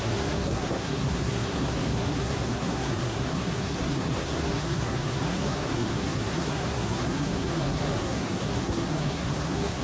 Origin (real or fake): fake